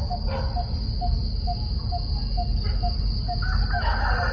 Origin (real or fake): real